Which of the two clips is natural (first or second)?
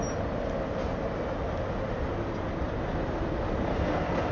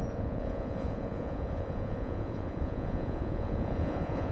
first